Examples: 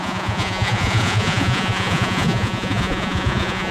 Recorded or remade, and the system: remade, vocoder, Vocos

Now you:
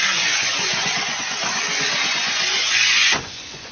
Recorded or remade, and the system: remade, vocoder, Vocos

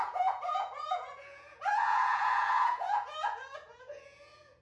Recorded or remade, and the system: remade, vocoder, Vocos